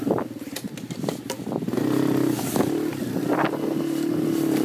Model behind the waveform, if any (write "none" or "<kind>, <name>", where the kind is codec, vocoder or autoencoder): none